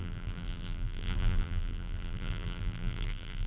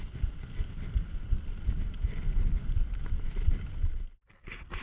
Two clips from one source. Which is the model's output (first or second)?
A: first